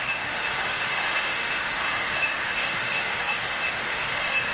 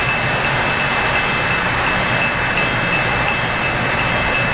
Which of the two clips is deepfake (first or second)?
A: first